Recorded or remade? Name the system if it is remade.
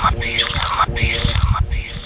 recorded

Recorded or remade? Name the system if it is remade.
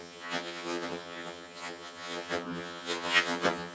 remade, vocoder, HiFi-GAN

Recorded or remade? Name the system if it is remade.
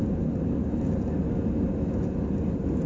recorded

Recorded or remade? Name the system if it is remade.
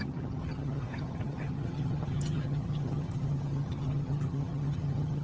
remade, vocoder, HiFi-GAN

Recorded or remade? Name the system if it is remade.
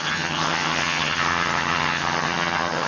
remade, vocoder, HiFi-GAN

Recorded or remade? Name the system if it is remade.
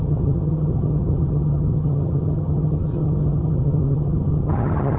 remade, vocoder, HiFi-GAN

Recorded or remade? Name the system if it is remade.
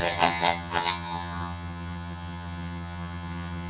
remade, vocoder, HiFi-GAN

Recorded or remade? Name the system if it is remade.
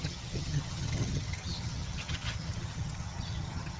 remade, vocoder, HiFi-GAN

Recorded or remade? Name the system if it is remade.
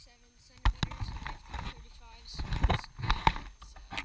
recorded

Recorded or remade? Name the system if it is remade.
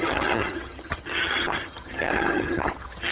remade, vocoder, HiFi-GAN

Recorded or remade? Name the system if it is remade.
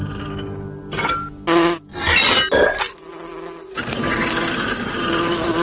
recorded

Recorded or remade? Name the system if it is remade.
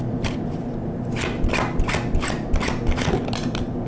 recorded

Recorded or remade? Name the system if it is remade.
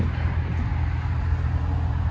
recorded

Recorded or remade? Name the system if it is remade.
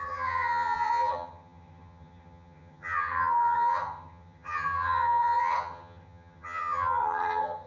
remade, vocoder, HiFi-GAN